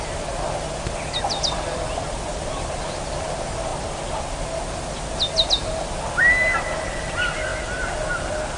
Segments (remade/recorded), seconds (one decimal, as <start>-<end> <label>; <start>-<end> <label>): 0.0-8.6 recorded